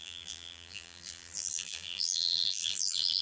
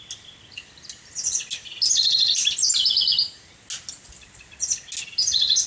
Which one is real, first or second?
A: second